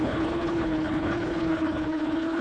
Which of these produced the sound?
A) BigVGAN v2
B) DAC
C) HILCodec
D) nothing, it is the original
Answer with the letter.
C